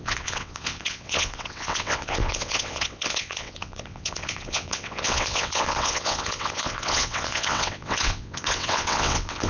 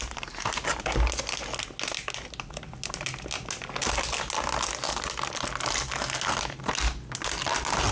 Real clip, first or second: second